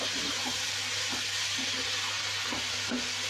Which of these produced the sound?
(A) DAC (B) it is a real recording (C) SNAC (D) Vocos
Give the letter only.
B